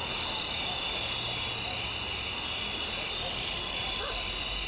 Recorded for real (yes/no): yes